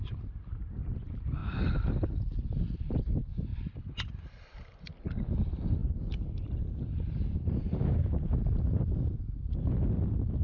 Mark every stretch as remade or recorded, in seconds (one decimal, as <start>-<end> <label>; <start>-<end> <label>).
0.0-3.5 recorded; 3.5-4.6 remade; 4.6-10.4 recorded